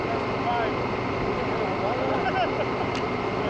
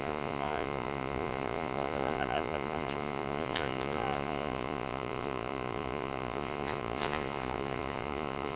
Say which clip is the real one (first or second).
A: first